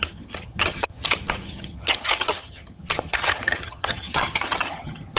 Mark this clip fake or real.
fake